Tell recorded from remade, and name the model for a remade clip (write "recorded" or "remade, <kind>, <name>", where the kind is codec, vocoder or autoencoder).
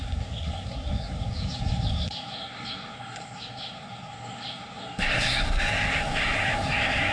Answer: remade, codec, SNAC